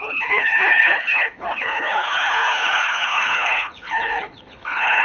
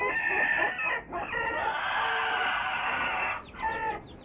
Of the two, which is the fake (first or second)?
first